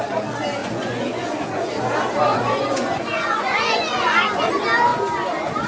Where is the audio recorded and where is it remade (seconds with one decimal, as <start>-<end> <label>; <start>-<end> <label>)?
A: 0.0-0.6 recorded; 0.6-1.7 remade; 1.7-2.3 recorded; 2.3-4.5 remade; 4.5-5.7 recorded